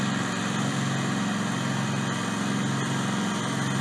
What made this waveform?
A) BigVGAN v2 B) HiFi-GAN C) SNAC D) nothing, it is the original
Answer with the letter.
D